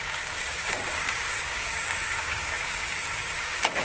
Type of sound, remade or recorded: remade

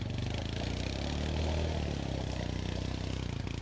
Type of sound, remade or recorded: recorded